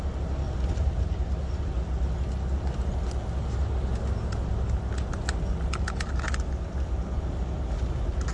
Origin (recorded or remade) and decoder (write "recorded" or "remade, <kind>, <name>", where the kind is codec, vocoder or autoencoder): recorded